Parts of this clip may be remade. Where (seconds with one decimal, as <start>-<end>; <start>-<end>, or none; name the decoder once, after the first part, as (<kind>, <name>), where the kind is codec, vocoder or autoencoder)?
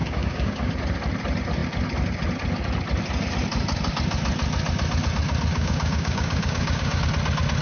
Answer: 0.0-0.7 (codec, DAC); 5.5-7.1